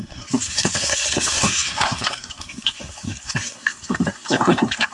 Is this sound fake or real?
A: fake